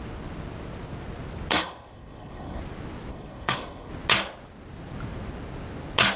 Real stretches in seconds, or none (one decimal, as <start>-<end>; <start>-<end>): 0.0-1.5; 2.6-3.1; 3.9-6.2